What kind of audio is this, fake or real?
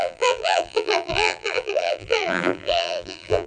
fake